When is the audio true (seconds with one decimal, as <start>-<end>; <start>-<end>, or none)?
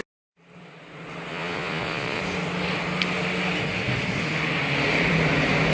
0.0-1.3; 2.2-5.7